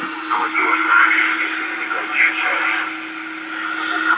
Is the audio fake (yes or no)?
no